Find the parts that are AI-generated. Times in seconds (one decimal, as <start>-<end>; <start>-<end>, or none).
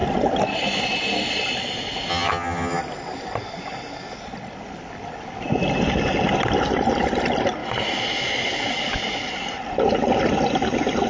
2.1-2.8